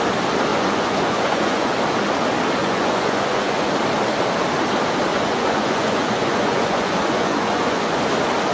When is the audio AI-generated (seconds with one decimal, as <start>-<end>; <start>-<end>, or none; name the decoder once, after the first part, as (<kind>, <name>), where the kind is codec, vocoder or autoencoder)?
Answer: 0.5-1.7 (vocoder, Vocos); 2.6-3.7; 5.1-8.0